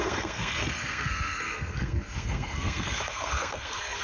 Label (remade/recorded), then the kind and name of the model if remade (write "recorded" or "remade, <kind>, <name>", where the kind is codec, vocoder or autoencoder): remade, codec, SNAC